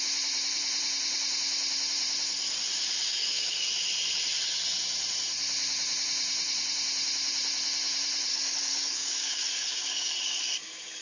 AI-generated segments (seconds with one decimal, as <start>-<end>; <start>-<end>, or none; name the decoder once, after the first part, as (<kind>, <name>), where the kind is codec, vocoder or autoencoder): 3.0-3.7 (codec, DAC); 8.3-11.0